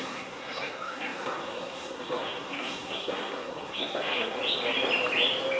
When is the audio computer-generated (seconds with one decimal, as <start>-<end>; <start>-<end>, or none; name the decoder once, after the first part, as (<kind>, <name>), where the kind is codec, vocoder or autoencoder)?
0.0-4.4 (codec, SNAC)